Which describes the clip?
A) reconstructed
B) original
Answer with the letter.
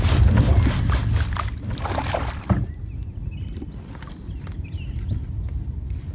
B